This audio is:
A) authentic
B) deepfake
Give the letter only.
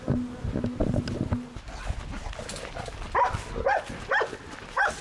A